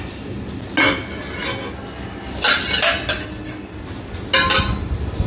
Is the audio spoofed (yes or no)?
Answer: no